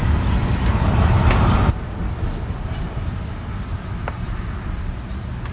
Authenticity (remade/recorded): recorded